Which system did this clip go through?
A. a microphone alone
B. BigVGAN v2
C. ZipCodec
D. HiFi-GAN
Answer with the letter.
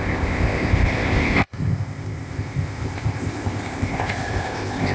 C